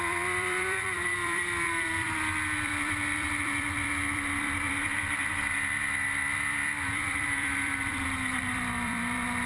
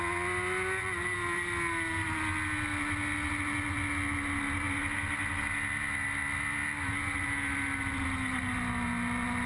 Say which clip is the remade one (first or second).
first